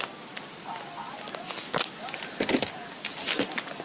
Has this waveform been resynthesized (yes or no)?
no